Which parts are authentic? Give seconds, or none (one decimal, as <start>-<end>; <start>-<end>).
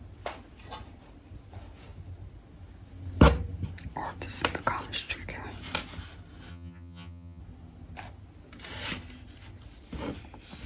0.0-6.5; 7.4-10.7